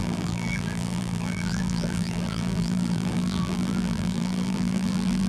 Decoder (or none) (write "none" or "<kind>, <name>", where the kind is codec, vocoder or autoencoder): vocoder, BigVGAN v2